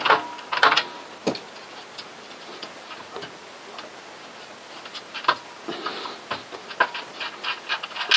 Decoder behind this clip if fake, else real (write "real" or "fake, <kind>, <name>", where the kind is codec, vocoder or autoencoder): real